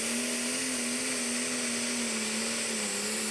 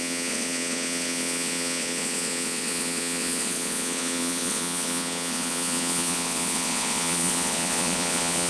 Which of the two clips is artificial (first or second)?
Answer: second